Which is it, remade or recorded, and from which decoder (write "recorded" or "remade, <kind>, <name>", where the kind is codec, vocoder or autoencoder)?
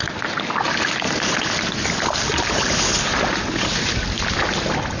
recorded